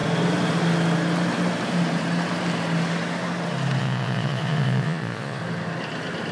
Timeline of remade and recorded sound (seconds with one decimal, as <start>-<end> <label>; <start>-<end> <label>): 0.0-3.8 recorded; 3.8-5.4 remade; 5.4-6.3 recorded